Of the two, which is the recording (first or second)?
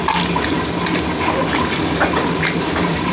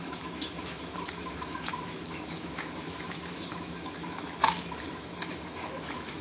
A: first